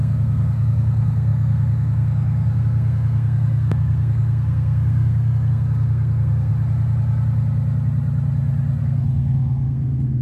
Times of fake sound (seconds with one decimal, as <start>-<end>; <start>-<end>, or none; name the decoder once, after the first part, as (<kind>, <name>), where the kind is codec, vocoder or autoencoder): 0.0-6.5 (codec, SNAC); 8.8-10.2